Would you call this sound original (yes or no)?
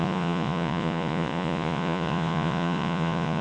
no